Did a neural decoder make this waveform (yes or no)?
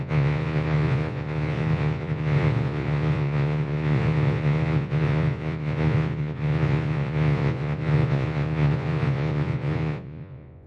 yes